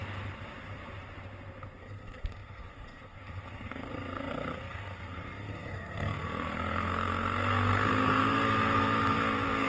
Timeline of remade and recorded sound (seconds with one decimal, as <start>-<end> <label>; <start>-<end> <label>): 0.0-1.8 recorded; 1.8-9.7 remade